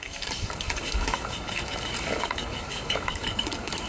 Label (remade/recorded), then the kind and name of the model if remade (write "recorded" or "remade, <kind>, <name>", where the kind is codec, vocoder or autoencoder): remade, codec, DAC